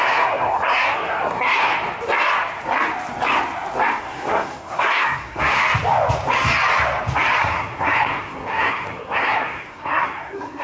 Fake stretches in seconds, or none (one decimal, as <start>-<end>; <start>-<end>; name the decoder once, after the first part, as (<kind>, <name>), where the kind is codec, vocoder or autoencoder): 0.0-1.7 (codec, SNAC); 4.0-5.6; 7.4-10.6